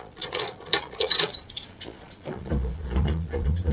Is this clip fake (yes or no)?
yes